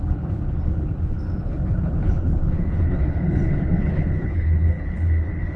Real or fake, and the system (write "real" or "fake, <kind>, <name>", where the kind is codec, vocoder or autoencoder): fake, codec, HILCodec